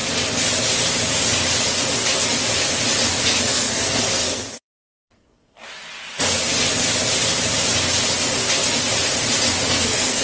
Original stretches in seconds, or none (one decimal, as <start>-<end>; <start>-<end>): 0.0-3.2; 5.7-9.7